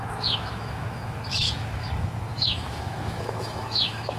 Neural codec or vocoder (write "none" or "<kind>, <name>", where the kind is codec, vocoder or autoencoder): autoencoder, DAC-VAE